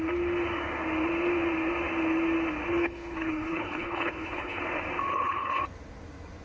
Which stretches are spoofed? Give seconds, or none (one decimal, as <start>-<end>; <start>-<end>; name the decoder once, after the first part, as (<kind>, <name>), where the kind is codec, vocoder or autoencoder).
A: 2.7-4.6 (codec, HILCodec); 5.1-5.6